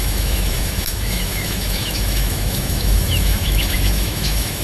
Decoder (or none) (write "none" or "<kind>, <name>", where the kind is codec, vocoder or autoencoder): autoencoder, DAC-VAE